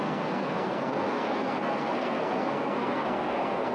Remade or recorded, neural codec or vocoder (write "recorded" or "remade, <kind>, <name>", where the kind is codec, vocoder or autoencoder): remade, codec, SNAC